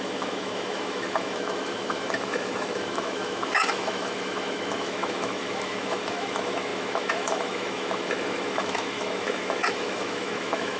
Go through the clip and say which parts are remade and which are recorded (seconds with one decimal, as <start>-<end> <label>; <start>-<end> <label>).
0.0-10.8 remade